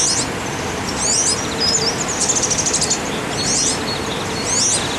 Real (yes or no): yes